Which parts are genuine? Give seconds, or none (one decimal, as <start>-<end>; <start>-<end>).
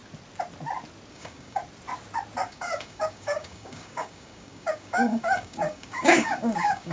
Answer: 0.0-1.1; 1.6-2.4